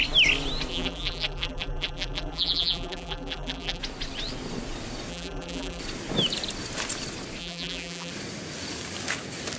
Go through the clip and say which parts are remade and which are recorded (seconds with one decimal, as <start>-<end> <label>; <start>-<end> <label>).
0.0-0.7 recorded; 0.7-3.8 remade; 3.8-5.1 recorded; 5.1-5.8 remade; 5.8-7.4 recorded; 7.4-8.1 remade; 8.1-9.6 recorded